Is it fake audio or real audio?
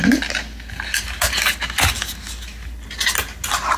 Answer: real